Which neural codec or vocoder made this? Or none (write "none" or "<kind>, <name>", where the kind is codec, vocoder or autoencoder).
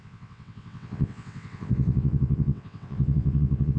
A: vocoder, WaveNeXt